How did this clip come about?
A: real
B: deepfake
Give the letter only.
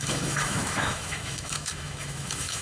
B